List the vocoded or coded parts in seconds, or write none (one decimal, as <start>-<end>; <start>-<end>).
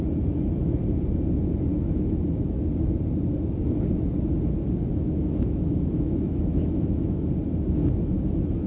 1.7-2.2; 4.9-7.2